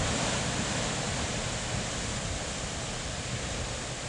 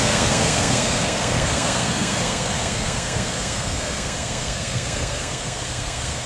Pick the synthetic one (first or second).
second